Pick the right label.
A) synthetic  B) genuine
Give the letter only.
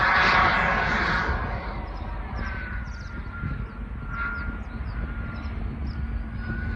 B